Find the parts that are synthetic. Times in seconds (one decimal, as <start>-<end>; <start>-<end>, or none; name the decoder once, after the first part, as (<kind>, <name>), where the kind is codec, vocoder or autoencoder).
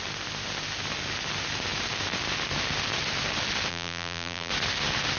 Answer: 3.7-4.5 (vocoder, BigVGAN v2)